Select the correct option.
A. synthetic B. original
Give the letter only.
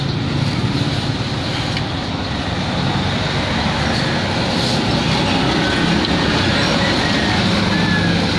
B